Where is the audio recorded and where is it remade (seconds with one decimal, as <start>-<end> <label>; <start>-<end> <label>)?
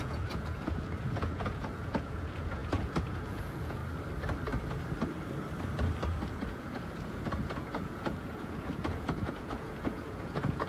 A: 0.0-3.8 remade; 3.8-6.3 recorded; 6.3-10.7 remade